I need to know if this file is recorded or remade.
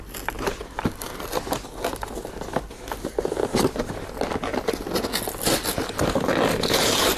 recorded